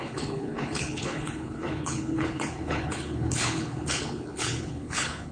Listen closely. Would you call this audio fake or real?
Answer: fake